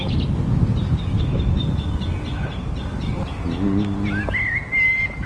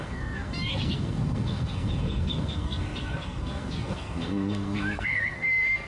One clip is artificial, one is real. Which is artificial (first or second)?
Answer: second